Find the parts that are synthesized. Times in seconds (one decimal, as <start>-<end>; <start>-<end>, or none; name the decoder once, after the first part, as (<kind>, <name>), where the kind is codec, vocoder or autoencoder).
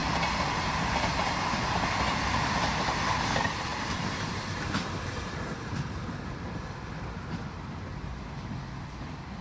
0.0-1.1 (vocoder, BigVGAN v2); 3.7-8.5